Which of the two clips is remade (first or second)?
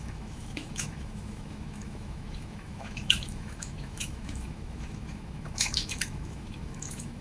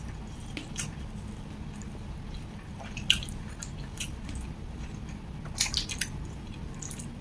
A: first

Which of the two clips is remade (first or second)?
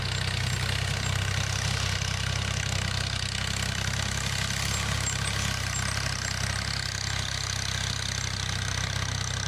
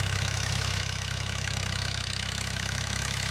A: second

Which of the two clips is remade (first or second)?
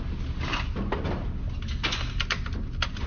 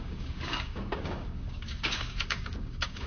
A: second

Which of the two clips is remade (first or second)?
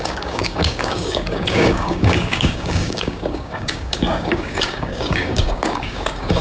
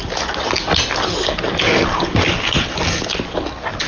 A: first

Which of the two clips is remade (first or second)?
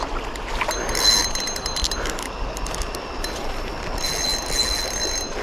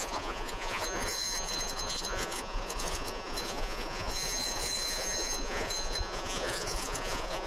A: second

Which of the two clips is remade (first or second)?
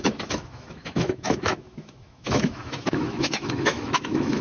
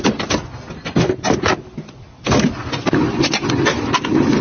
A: first